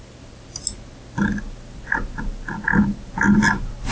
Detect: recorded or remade recorded